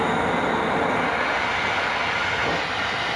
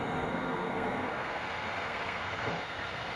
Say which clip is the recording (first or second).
first